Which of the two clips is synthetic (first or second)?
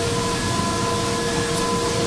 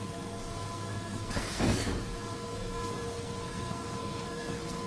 second